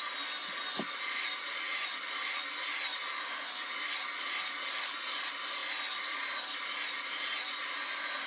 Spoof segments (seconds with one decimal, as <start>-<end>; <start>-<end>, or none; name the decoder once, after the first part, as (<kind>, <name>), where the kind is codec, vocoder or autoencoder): none